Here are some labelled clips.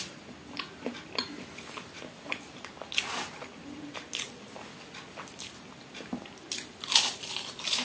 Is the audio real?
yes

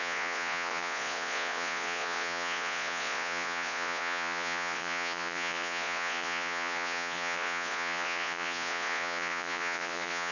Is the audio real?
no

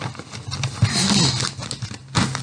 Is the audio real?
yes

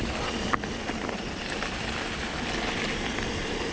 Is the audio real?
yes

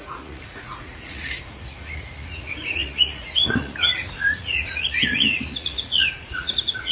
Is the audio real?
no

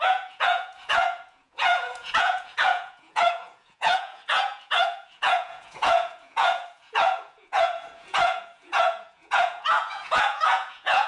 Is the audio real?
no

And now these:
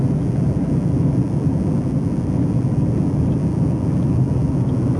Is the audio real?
yes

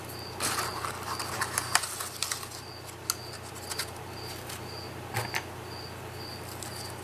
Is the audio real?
yes